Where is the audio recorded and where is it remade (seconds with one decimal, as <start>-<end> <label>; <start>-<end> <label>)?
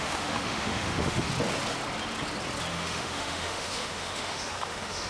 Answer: 0.0-1.3 remade; 1.3-2.7 recorded; 2.7-5.1 remade